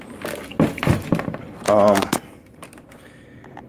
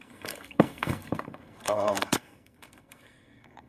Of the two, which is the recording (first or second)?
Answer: first